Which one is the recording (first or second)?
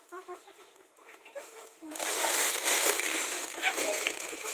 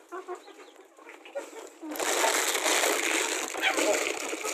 second